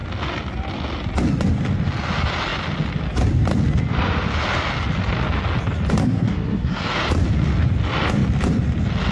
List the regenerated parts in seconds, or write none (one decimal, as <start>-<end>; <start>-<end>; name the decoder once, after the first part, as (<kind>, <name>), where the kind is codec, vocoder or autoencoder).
6.0-6.9 (codec, SNAC)

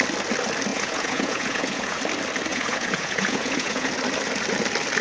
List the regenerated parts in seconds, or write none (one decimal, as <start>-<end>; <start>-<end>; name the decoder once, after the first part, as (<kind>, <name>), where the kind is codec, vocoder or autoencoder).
0.7-2.0 (vocoder, Vocos); 2.5-3.9

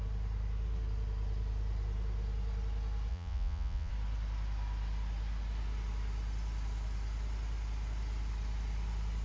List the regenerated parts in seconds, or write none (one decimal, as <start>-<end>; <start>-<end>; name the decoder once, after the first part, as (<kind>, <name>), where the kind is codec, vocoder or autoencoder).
3.1-3.9 (vocoder, Vocos)

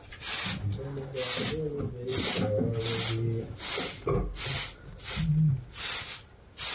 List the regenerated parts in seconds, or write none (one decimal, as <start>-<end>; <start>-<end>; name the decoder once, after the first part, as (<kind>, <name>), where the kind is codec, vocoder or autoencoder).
none

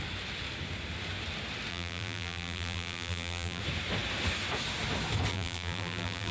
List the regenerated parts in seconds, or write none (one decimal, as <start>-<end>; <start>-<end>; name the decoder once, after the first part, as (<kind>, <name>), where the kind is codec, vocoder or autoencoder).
1.7-3.6 (vocoder, BigVGAN v2); 5.3-6.3

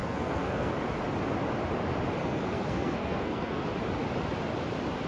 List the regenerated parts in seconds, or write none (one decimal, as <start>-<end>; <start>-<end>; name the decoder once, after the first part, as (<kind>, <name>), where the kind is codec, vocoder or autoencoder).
0.0-0.7 (codec, SNAC); 2.2-3.7

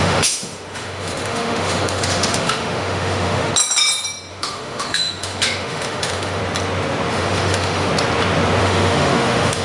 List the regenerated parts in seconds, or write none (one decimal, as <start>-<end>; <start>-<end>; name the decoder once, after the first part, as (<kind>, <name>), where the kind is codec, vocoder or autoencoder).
0.0-3.5 (autoencoder, DAC-VAE); 4.3-6.4; 7.1-7.9; 8.6-9.6

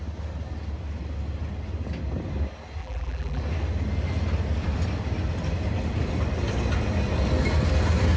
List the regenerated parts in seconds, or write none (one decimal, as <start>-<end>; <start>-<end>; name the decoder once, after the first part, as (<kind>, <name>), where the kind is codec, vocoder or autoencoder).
2.8-3.4 (vocoder, BigVGAN v2)